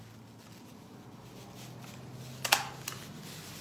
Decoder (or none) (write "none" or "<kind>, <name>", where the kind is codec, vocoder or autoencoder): none